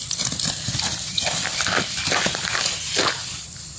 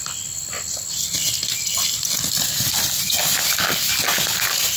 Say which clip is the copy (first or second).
first